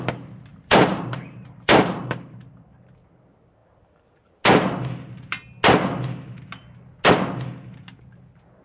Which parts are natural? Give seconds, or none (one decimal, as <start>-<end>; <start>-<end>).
0.0-0.5; 2.4-8.6